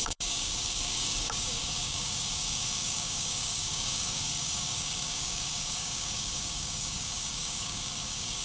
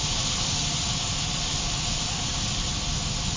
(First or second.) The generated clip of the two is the first